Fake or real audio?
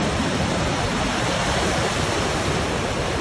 real